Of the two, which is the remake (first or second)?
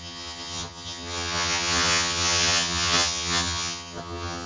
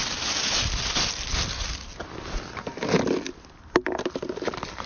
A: first